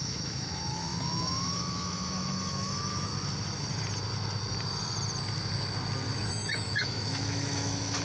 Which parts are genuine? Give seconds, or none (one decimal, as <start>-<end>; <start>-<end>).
3.1-6.3